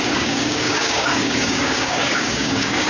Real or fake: fake